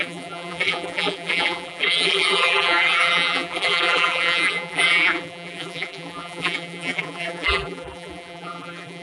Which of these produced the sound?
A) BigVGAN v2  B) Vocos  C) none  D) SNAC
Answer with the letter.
A